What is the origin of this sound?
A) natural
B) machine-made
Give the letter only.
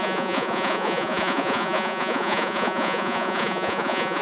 B